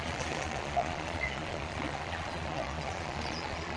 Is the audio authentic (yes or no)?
no